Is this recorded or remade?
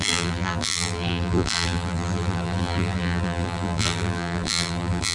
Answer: remade